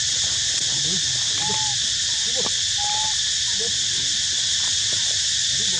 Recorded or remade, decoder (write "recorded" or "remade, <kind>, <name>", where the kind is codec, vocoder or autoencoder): recorded